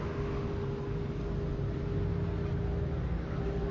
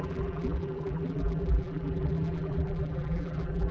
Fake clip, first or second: second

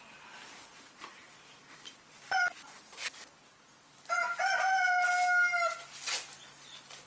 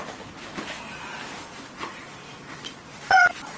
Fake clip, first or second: second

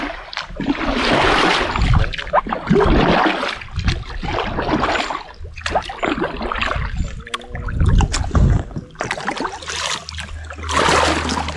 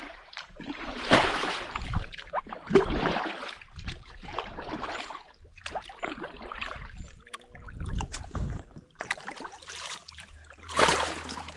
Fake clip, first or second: second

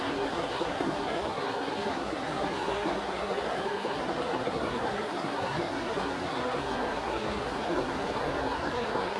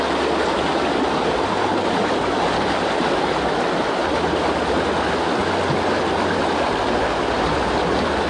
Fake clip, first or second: first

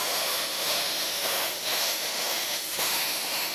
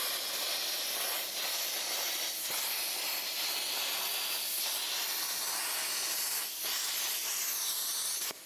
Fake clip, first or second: first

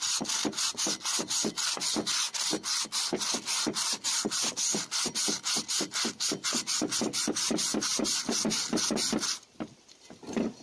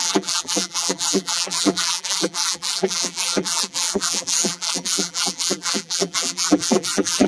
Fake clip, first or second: second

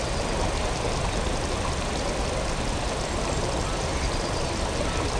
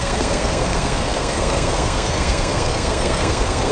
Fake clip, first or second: second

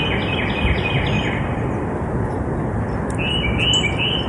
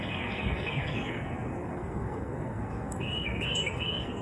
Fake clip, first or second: second